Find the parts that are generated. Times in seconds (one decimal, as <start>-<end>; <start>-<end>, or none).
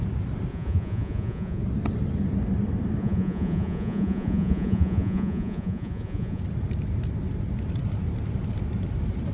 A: 0.5-1.6; 3.0-6.4